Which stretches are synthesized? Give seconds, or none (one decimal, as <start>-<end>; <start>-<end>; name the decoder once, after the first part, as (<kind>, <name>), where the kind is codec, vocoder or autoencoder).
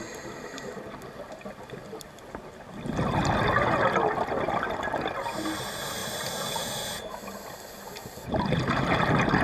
none